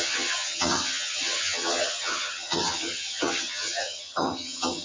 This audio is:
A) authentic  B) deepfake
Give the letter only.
B